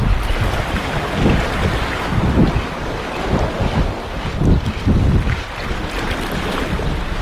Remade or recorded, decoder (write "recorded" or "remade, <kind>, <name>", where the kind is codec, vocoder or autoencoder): recorded